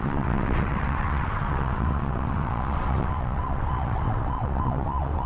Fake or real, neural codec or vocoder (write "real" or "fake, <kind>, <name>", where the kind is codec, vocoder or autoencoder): fake, vocoder, WaveNeXt